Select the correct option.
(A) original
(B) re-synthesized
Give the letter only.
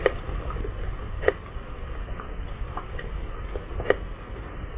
A